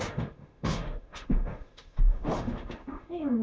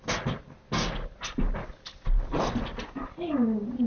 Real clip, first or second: second